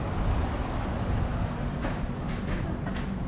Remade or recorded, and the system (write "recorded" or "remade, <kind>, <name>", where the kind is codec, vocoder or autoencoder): recorded